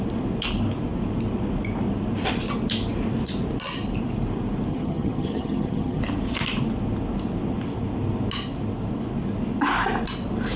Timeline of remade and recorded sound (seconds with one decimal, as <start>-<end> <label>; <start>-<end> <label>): 0.0-4.7 recorded; 4.7-6.0 remade; 6.0-10.6 recorded